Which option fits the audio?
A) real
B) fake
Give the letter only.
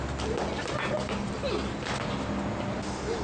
A